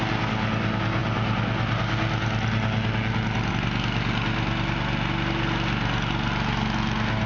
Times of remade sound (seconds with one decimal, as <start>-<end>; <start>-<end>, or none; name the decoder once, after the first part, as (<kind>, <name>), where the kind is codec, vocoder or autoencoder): none